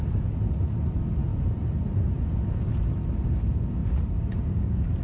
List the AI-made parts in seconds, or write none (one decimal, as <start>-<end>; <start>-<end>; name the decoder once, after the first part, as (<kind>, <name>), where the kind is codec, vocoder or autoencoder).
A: 1.3-2.6 (vocoder, BigVGAN v2); 3.8-5.0